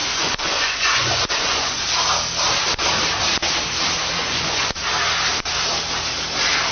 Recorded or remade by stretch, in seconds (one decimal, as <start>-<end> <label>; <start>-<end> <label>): 0.0-1.8 remade; 1.8-4.2 recorded; 4.2-4.8 remade; 4.8-6.7 recorded